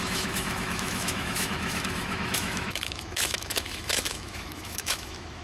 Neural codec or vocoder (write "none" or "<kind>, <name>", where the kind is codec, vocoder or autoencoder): autoencoder, DAC-VAE